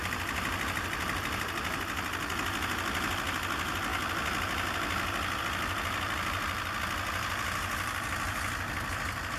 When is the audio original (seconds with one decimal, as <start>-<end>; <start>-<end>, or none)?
0.0-9.4